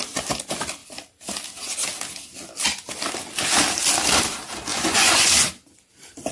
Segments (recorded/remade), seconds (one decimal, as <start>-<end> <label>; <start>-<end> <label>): 0.0-4.7 recorded; 4.7-5.5 remade; 5.5-6.3 recorded